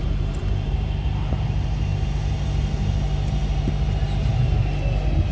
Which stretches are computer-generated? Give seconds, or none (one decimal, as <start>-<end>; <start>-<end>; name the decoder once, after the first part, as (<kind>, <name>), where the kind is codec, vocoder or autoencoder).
0.0-1.9 (vocoder, BigVGAN v2)